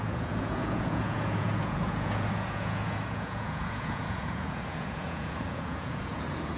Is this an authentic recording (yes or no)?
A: no